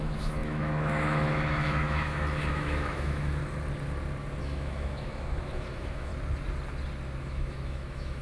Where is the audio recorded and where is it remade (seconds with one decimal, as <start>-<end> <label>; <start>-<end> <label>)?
0.0-3.4 remade; 3.4-4.4 recorded; 4.4-6.1 remade; 6.1-7.2 recorded; 7.2-8.2 remade